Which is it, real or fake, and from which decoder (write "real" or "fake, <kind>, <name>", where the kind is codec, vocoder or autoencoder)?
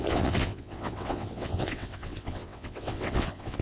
fake, vocoder, WaveNeXt